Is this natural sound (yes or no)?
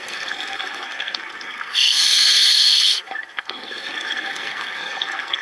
no